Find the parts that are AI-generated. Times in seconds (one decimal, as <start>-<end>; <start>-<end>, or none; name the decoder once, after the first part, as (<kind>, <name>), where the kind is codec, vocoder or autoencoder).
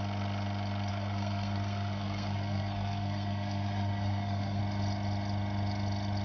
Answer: 0.9-4.6 (codec, SNAC)